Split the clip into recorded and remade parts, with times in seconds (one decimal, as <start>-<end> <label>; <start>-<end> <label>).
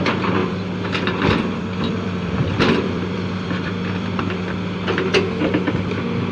0.0-0.4 recorded; 0.4-4.2 remade; 4.2-6.3 recorded